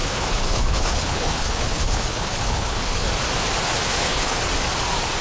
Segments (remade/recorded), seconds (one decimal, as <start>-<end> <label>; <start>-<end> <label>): 0.0-3.1 remade; 3.1-3.9 recorded; 3.9-4.4 remade; 4.4-5.2 recorded